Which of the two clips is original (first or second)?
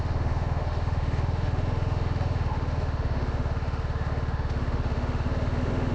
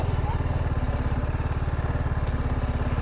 second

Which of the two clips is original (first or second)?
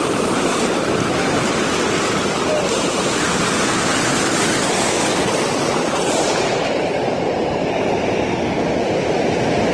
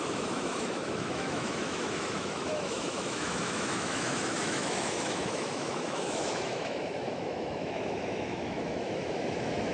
first